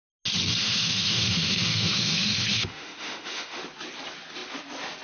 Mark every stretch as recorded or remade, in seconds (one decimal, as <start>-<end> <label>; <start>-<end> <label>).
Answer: 0.0-0.6 recorded; 0.6-3.6 remade; 3.6-5.0 recorded